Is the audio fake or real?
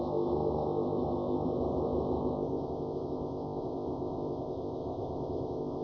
fake